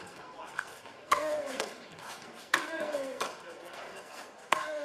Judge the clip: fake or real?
fake